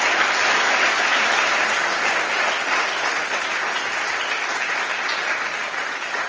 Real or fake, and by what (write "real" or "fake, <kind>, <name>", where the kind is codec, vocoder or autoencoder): real